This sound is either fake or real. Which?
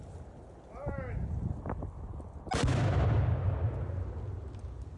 real